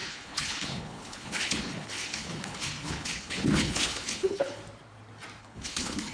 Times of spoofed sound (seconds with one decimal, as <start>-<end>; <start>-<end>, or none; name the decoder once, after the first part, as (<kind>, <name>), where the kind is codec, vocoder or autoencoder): 0.0-4.6 (codec, HILCodec); 5.4-6.1